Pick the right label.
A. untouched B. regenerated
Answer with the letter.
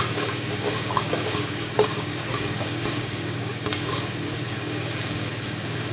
B